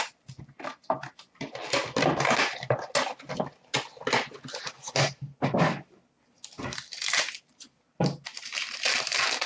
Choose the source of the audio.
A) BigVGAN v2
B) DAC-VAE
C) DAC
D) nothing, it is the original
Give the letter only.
D